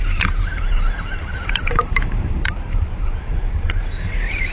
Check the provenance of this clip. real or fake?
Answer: fake